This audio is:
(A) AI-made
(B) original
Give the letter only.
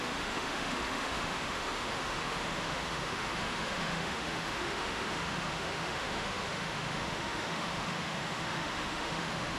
A